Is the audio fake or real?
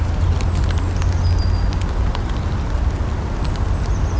real